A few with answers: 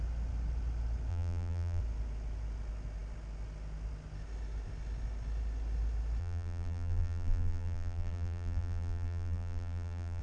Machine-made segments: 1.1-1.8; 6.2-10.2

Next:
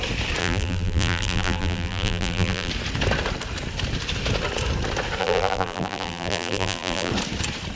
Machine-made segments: 0.4-2.7; 5.2-7.1